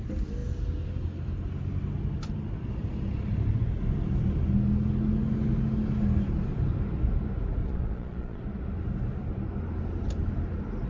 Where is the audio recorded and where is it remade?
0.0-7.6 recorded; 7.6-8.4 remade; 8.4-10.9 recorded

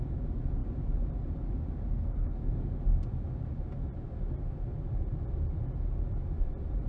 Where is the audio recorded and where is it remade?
0.0-1.9 recorded; 1.9-2.7 remade; 2.7-6.9 recorded

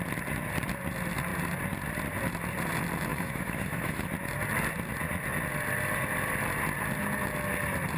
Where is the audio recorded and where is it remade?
0.0-3.1 recorded; 3.1-4.1 remade; 4.1-8.0 recorded

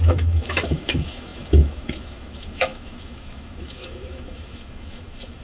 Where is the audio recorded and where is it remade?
0.0-5.4 remade

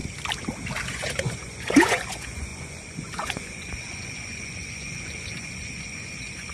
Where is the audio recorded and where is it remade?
0.0-0.9 recorded; 0.9-6.5 remade